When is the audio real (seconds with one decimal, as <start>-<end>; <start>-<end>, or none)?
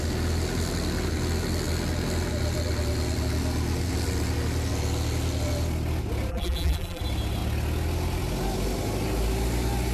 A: 0.0-6.3; 7.0-9.9